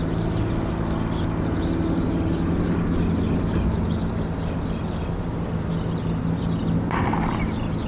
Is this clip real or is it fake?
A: real